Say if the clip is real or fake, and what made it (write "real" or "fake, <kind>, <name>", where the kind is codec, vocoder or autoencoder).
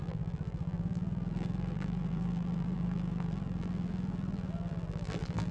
fake, vocoder, BigVGAN v2